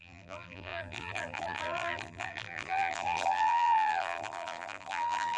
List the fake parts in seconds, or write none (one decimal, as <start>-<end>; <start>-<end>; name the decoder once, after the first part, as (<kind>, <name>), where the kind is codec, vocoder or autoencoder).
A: 0.0-5.4 (vocoder, BigVGAN v2)